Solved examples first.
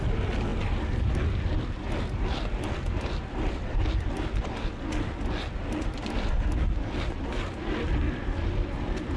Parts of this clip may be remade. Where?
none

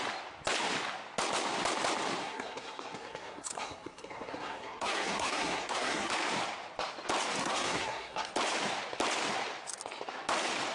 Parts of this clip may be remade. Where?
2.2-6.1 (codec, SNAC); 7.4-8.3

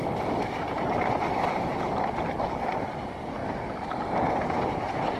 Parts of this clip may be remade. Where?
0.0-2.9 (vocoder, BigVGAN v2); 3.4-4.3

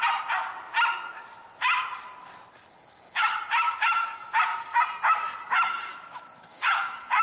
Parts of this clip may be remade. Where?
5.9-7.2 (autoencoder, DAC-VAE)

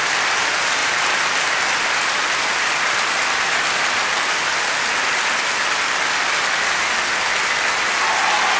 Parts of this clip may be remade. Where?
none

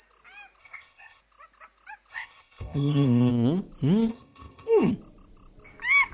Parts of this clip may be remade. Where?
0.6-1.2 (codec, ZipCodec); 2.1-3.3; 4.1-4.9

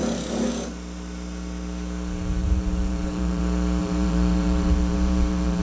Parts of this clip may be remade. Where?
2.4-3.4 (vocoder, BigVGAN v2); 3.8-5.6

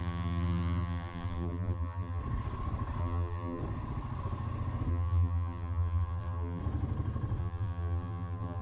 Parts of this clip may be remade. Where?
0.0-2.2 (vocoder, BigVGAN v2); 3.0-3.6; 4.9-6.6; 7.4-8.6